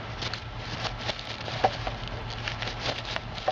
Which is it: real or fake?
real